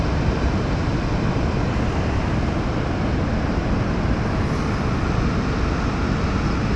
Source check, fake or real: real